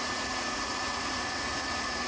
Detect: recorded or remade remade